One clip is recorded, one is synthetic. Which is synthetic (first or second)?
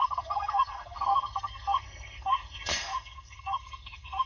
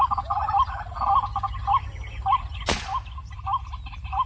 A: first